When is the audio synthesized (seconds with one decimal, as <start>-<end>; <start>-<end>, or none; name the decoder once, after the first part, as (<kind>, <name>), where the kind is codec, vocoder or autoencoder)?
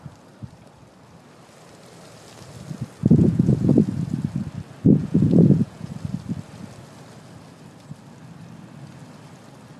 3.0-3.7 (vocoder, Vocos); 5.0-5.9